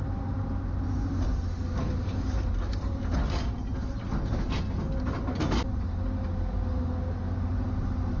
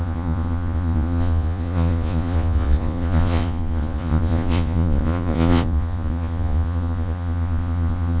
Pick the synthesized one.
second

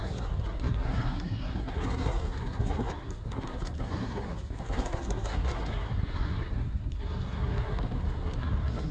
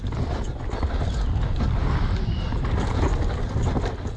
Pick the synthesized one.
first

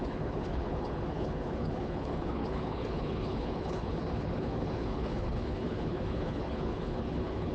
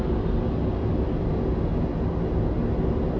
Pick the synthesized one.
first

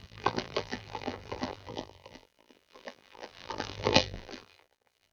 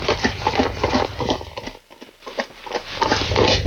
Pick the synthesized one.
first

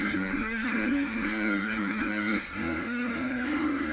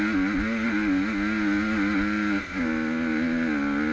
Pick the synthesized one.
first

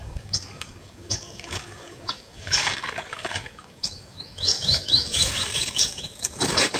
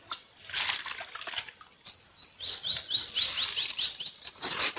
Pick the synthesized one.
first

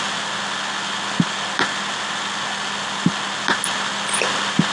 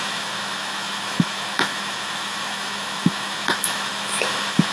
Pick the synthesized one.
second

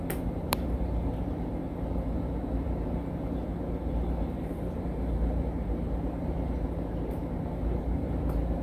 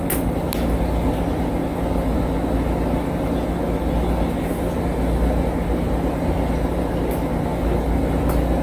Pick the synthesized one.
first